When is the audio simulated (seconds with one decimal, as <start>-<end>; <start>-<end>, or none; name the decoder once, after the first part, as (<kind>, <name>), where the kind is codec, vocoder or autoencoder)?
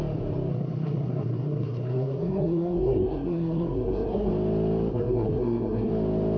0.5-4.3 (codec, SNAC); 4.9-5.9